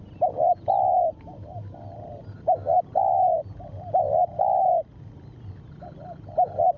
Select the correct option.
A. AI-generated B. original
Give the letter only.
B